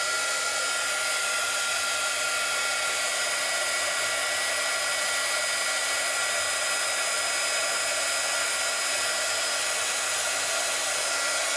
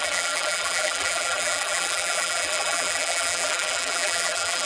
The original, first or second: first